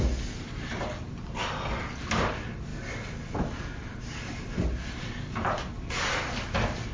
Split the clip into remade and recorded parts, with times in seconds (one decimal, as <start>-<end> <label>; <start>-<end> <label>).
0.0-6.9 recorded